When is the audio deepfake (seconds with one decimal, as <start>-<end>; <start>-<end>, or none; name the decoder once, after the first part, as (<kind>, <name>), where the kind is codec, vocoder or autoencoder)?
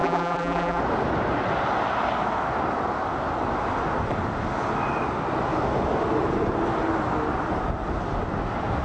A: 0.0-0.8 (vocoder, BigVGAN v2)